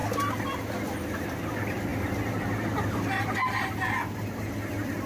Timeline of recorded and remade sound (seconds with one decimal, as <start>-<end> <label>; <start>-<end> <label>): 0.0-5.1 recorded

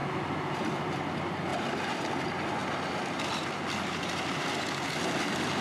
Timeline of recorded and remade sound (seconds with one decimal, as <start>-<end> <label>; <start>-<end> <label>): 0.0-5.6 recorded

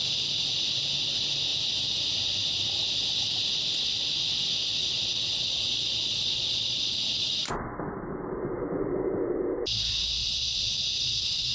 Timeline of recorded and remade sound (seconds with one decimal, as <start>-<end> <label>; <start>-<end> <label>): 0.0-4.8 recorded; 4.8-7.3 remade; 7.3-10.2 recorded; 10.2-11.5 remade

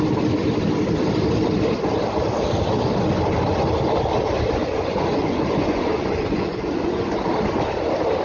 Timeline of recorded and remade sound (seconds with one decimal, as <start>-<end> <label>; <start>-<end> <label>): 0.0-4.6 recorded; 4.6-7.1 remade; 7.1-8.2 recorded

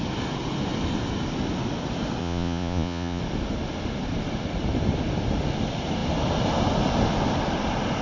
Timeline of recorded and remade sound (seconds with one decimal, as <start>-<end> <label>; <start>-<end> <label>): 0.0-2.2 recorded; 2.2-3.2 remade; 3.2-8.0 recorded

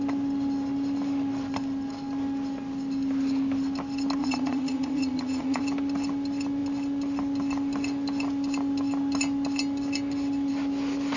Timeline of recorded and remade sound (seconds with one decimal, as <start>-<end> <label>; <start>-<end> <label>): 0.0-4.2 recorded; 4.2-5.6 remade; 5.6-11.2 recorded

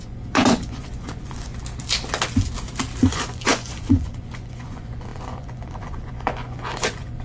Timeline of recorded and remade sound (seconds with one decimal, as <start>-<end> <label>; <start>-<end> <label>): 0.0-1.5 remade; 1.5-3.0 recorded; 3.0-7.2 remade

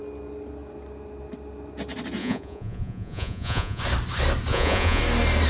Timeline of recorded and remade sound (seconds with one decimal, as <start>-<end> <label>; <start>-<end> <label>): 0.0-2.2 recorded; 2.2-3.8 remade; 3.8-4.5 recorded; 4.5-5.0 remade; 5.0-5.5 recorded